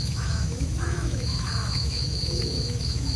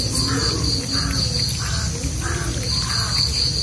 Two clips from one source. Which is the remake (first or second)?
first